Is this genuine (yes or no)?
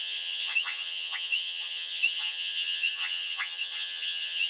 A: no